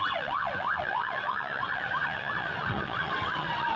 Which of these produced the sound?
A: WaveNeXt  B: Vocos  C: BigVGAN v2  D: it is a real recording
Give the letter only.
A